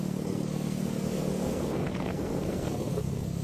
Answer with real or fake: fake